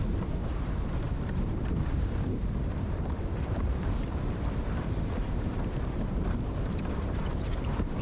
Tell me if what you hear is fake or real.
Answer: fake